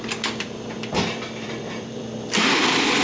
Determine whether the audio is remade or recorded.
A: remade